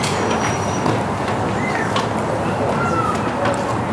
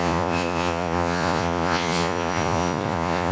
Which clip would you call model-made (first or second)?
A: second